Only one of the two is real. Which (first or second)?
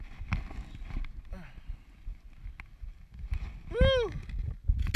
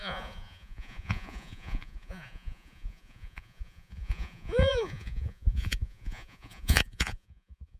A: first